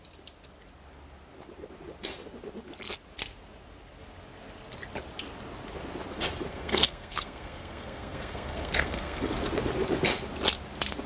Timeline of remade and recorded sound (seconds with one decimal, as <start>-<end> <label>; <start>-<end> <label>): 0.0-6.5 recorded; 6.5-9.3 remade; 9.3-11.1 recorded